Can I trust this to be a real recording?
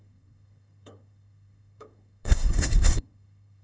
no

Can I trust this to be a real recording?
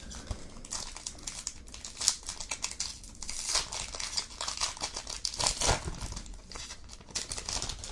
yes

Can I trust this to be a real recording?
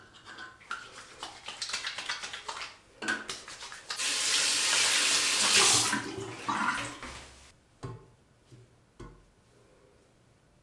yes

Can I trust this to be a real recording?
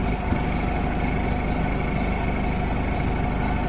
yes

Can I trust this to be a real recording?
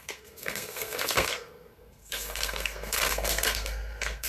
no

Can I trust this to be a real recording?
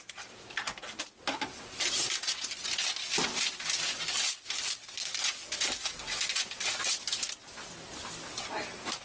yes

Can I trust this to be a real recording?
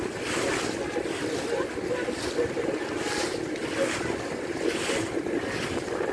yes